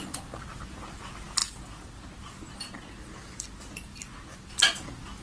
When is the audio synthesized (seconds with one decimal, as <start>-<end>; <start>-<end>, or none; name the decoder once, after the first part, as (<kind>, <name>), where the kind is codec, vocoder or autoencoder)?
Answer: none